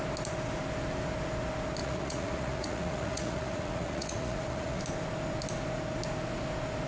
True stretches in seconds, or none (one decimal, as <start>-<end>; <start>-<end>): 0.0-1.8; 4.8-6.9